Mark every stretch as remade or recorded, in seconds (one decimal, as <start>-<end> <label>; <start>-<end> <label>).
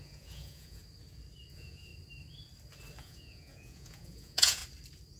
0.0-0.8 remade; 0.8-1.5 recorded; 1.5-1.9 remade; 1.9-3.0 recorded; 3.0-4.6 remade; 4.6-5.2 recorded